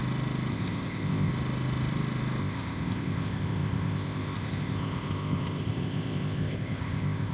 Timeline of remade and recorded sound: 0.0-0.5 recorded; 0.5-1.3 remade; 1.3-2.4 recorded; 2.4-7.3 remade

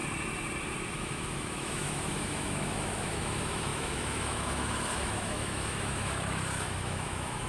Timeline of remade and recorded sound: 0.0-0.9 recorded; 0.9-7.5 remade

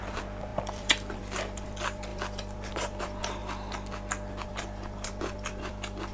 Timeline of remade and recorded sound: 0.0-3.4 remade; 3.4-4.3 recorded; 4.3-6.1 remade

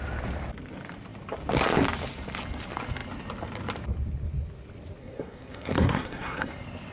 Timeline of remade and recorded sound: 0.0-5.0 recorded; 5.0-6.5 remade; 6.5-6.9 recorded

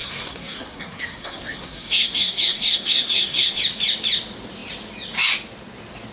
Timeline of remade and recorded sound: 0.0-3.6 remade; 3.6-6.1 recorded